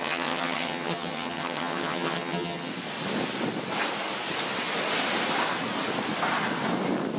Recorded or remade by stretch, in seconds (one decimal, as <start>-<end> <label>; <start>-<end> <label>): 0.0-2.7 remade; 2.7-7.2 recorded